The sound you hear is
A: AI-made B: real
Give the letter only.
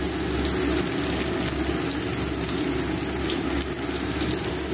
B